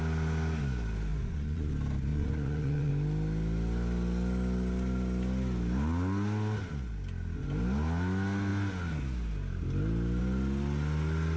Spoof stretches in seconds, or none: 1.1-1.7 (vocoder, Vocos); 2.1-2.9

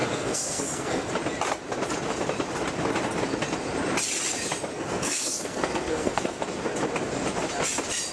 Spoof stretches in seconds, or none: 0.0-1.1 (codec, SNAC); 4.7-6.4

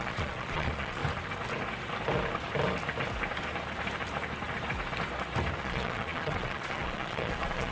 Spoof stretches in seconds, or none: 0.0-1.0 (vocoder, Vocos); 5.6-7.7

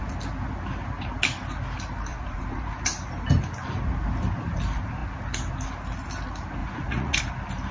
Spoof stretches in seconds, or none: 2.1-2.8 (vocoder, Vocos); 6.6-7.2

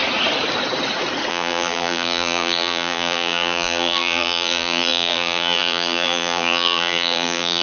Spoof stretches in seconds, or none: 1.3-7.6 (vocoder, BigVGAN v2)